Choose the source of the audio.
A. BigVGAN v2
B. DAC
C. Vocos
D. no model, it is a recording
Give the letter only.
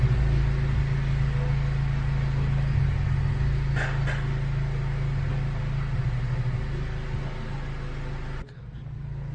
D